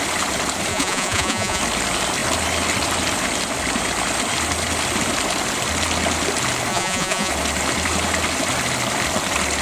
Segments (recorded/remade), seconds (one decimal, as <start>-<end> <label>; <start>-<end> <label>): 0.0-0.7 recorded; 0.7-1.6 remade; 1.6-6.7 recorded; 6.7-7.3 remade; 7.3-9.6 recorded